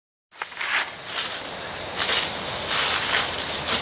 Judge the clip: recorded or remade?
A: recorded